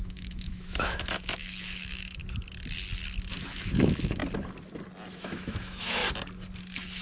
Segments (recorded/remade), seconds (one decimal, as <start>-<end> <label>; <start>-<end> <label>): 0.0-2.2 remade; 2.2-3.3 recorded; 3.3-4.2 remade; 4.2-5.1 recorded; 5.1-6.0 remade; 6.0-6.6 recorded; 6.6-7.0 remade